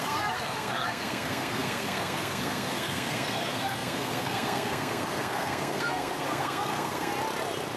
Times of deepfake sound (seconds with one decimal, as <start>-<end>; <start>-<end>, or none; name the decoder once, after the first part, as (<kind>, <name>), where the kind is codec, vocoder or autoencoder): 0.0-7.1 (codec, SNAC)